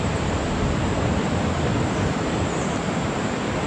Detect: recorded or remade recorded